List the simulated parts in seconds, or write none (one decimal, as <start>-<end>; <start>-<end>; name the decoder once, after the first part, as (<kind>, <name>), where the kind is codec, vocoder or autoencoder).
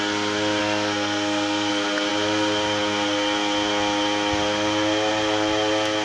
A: 0.6-1.7 (codec, SNAC)